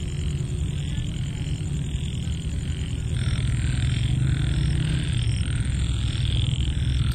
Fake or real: real